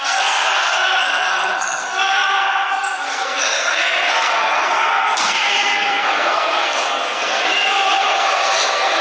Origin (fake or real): fake